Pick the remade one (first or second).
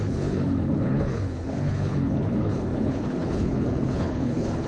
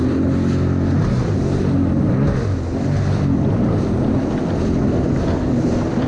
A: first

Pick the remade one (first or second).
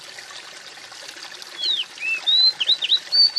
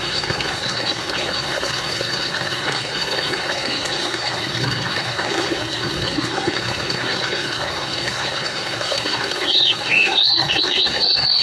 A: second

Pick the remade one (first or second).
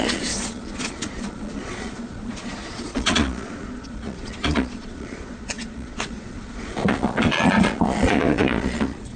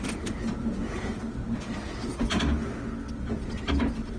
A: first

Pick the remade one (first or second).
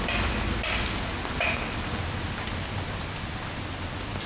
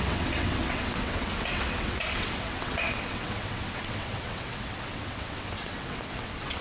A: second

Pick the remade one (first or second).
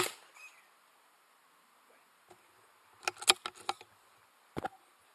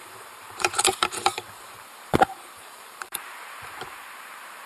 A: second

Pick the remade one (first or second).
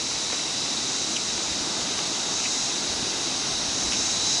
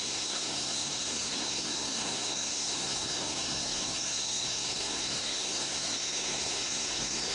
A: second